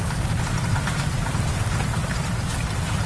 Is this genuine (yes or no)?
no